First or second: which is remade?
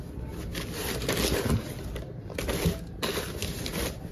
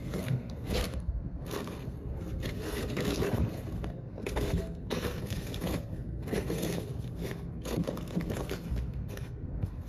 second